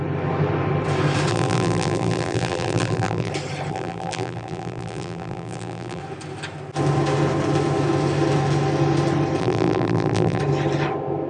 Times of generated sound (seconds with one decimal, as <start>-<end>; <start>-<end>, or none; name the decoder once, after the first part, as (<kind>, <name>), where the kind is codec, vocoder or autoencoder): 1.3-3.3 (vocoder, BigVGAN v2); 3.7-6.0; 9.4-10.4